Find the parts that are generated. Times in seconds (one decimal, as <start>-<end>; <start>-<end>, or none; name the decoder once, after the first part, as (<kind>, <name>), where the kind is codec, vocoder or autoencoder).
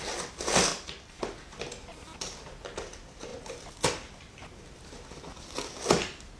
none